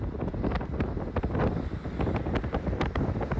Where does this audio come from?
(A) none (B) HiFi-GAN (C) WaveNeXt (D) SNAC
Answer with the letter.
A